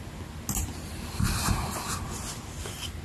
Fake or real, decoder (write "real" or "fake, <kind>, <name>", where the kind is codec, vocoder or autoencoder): real